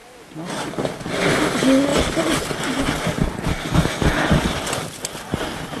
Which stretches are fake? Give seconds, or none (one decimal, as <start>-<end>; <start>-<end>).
none